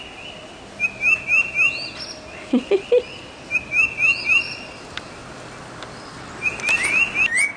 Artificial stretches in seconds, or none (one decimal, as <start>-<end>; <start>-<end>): none